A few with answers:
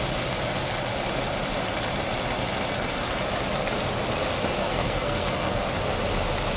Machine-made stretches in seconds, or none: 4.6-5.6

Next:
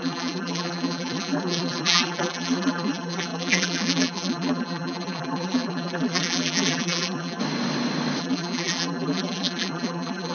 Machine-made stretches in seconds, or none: 0.0-7.4; 8.2-10.3

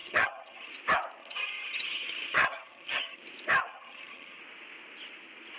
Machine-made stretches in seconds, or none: 0.0-0.7; 1.2-3.2; 3.7-4.4

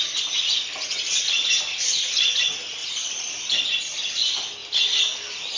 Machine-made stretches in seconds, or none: 2.8-3.6; 4.6-5.6

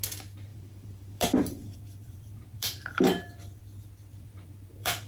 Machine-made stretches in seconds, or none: 0.5-3.6; 4.1-5.1

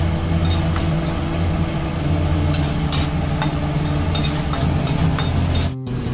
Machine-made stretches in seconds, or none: none